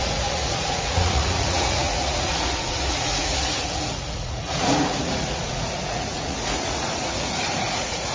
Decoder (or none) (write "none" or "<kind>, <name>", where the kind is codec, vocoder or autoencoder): vocoder, Vocos